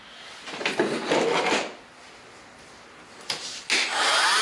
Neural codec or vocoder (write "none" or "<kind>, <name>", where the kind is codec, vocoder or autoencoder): none